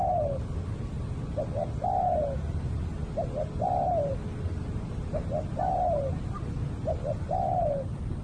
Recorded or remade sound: recorded